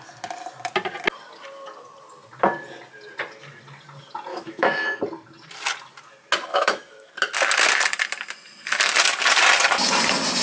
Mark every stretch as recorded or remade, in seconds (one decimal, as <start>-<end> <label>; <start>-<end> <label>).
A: 0.0-4.3 recorded; 4.3-5.0 remade; 5.0-6.5 recorded; 6.5-7.1 remade; 7.1-10.4 recorded